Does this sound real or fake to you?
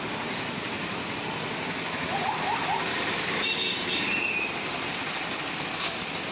real